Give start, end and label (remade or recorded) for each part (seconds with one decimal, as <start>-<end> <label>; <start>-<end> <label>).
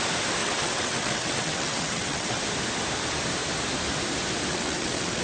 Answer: 0.0-0.4 recorded; 0.4-2.4 remade; 2.4-4.5 recorded; 4.5-5.2 remade